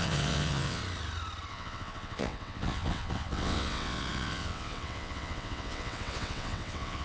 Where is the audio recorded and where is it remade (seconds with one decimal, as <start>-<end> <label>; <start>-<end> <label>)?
0.0-0.8 remade; 0.8-1.5 recorded; 1.5-7.0 remade

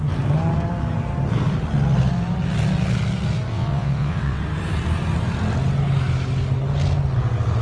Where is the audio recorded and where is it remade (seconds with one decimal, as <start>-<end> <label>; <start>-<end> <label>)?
0.0-3.5 recorded; 3.5-4.4 remade; 4.4-7.6 recorded

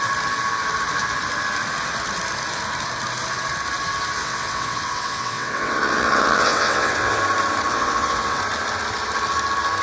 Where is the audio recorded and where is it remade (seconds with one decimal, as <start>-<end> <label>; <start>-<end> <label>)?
0.0-4.2 recorded; 4.2-7.2 remade; 7.2-7.7 recorded; 7.7-8.4 remade; 8.4-9.8 recorded

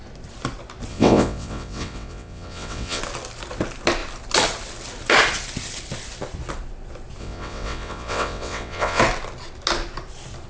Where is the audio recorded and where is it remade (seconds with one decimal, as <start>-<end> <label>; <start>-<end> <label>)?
0.0-0.9 recorded; 0.9-3.0 remade; 3.0-7.2 recorded; 7.2-9.0 remade; 9.0-10.5 recorded

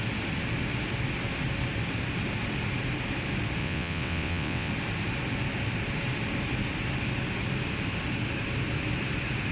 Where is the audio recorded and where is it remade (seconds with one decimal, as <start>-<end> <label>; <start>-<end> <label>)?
0.0-3.6 recorded; 3.6-4.7 remade; 4.7-9.5 recorded

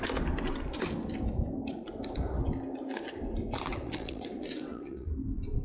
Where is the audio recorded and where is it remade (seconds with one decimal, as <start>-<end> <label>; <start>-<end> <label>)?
0.0-3.7 recorded; 3.7-5.1 remade; 5.1-5.6 recorded